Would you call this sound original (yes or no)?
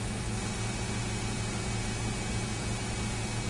yes